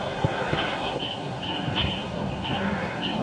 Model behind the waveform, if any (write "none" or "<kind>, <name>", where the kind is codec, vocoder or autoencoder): codec, SNAC